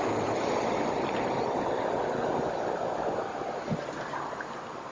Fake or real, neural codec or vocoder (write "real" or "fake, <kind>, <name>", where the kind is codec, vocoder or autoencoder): real